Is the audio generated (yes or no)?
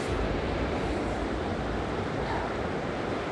yes